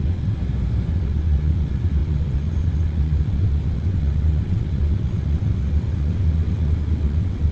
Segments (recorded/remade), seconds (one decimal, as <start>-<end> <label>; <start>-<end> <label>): 0.0-0.4 remade; 0.4-0.9 recorded; 0.9-7.5 remade